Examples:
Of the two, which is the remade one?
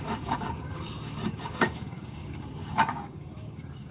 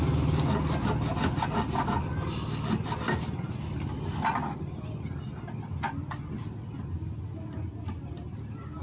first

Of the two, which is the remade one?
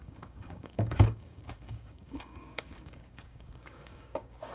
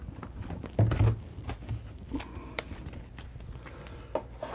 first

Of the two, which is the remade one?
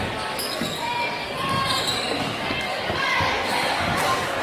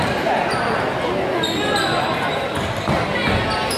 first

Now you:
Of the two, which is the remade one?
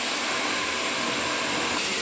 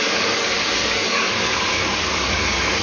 second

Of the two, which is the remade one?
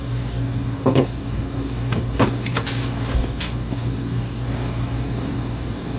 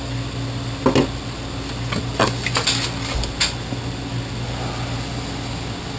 first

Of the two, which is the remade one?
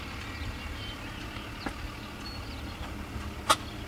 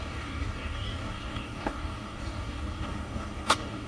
second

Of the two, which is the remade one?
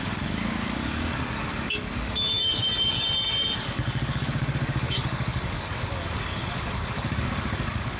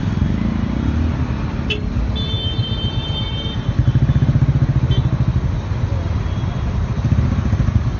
first